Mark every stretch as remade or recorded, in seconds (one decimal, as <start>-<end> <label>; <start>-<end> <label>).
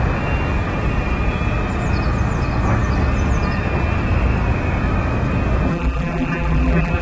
0.0-5.7 recorded; 5.7-7.0 remade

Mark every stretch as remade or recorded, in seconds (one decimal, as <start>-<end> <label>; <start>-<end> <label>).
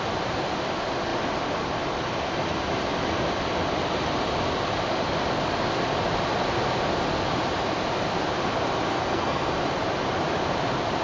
0.0-8.9 recorded; 8.9-9.5 remade; 9.5-11.0 recorded